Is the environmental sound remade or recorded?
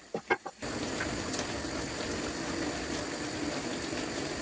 recorded